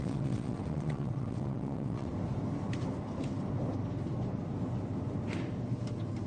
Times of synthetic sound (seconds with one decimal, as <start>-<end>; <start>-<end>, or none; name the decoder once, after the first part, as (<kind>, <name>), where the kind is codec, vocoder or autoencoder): 0.0-2.1 (vocoder, WaveNeXt)